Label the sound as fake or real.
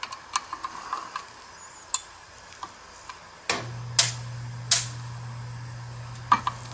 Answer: real